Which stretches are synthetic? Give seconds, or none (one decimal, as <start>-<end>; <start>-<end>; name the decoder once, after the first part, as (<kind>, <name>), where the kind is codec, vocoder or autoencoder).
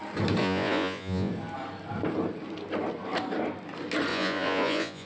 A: 0.4-1.3 (vocoder, Vocos); 4.1-5.1